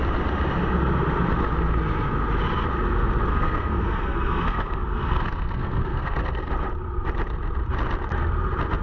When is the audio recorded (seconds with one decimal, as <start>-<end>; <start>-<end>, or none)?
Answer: 0.0-3.3; 6.5-8.8